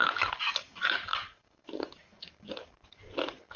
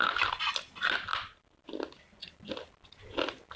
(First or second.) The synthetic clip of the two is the first